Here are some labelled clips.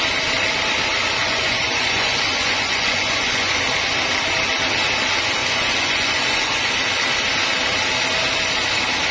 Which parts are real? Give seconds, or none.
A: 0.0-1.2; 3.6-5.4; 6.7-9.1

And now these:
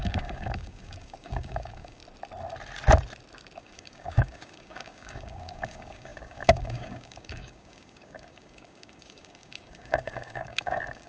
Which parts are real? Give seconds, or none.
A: 2.0-3.6

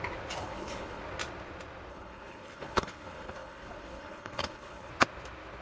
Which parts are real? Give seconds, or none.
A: 0.0-0.4; 1.0-1.9; 4.9-5.6

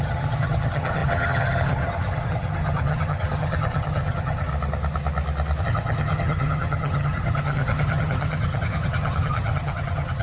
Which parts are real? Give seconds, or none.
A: 4.5-5.6

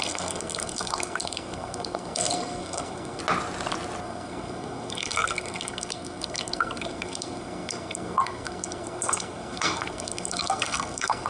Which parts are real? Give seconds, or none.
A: 3.2-4.0

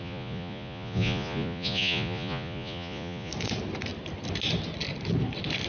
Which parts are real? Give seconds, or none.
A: 3.3-5.7